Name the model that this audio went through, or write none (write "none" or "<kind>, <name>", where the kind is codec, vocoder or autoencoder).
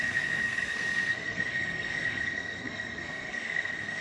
codec, SNAC